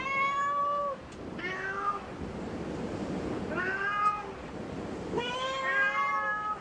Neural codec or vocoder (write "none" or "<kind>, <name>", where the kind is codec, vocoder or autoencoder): none